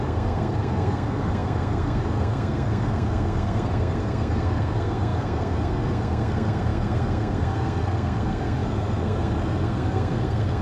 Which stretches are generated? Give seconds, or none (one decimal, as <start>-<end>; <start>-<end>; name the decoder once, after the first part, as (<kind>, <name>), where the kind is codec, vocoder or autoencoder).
0.0-10.6 (codec, SNAC)